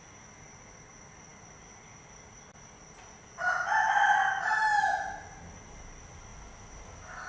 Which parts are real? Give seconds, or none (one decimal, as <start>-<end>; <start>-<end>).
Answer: 0.0-7.3